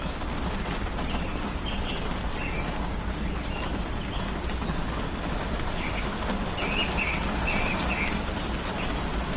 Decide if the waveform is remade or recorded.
recorded